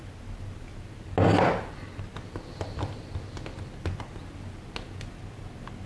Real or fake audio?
real